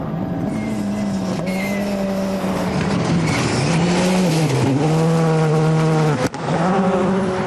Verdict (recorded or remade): recorded